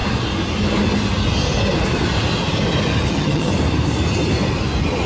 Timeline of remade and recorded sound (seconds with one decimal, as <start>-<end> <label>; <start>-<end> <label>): 0.0-3.1 recorded; 3.1-3.5 remade; 3.5-5.1 recorded